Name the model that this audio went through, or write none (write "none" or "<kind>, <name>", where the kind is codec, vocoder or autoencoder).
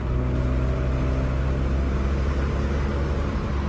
none